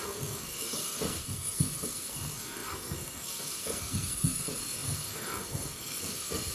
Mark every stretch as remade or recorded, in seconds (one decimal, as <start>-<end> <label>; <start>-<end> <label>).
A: 0.0-6.5 remade